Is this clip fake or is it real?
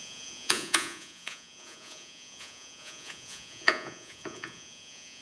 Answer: fake